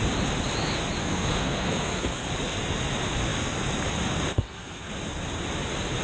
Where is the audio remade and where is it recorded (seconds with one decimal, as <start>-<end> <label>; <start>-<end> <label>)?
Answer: 0.0-1.0 recorded; 1.0-2.3 remade; 2.3-4.3 recorded; 4.3-4.9 remade; 4.9-6.0 recorded